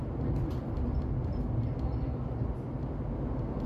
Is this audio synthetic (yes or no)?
no